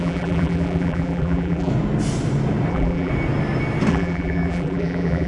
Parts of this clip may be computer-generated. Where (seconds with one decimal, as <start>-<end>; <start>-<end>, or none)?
0.0-1.7; 2.7-3.1; 3.9-5.3